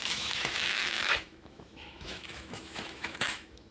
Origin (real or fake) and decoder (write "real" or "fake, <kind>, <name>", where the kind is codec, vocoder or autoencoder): fake, autoencoder, DAC-VAE